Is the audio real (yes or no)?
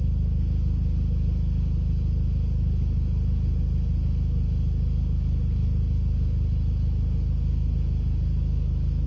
yes